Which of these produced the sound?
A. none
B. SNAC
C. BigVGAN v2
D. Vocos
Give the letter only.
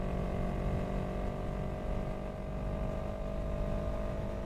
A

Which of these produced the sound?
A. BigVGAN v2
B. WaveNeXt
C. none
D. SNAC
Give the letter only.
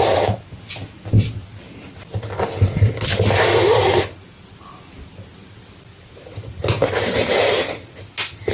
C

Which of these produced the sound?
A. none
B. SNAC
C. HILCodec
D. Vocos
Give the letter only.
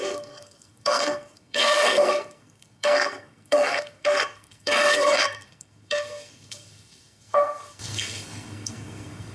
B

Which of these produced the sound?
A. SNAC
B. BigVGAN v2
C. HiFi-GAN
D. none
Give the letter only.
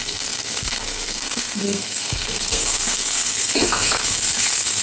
A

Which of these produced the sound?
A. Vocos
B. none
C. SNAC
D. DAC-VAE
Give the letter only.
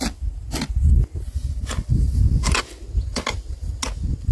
B